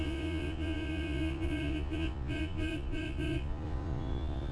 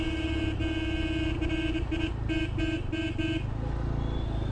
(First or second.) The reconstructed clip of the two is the first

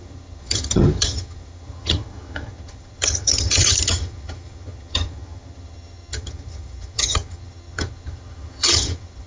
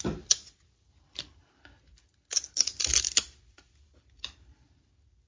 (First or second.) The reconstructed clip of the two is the first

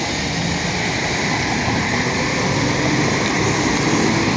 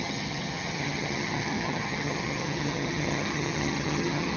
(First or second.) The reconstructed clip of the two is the second